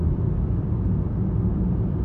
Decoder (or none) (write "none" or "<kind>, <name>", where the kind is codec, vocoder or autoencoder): none